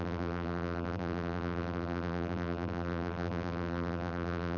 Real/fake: fake